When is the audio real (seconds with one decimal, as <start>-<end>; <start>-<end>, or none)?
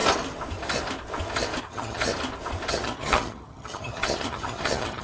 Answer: 0.0-1.6; 2.1-2.7